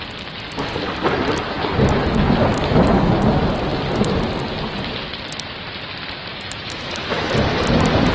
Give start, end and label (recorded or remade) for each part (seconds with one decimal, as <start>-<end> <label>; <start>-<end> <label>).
0.0-2.5 recorded; 2.5-3.1 remade; 3.1-6.3 recorded; 6.3-7.3 remade; 7.3-8.1 recorded